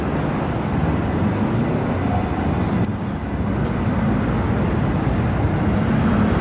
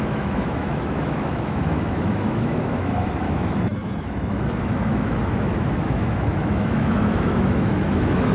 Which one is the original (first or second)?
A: first